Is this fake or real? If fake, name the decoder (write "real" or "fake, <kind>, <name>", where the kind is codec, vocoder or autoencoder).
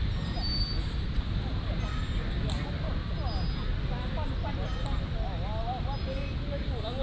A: real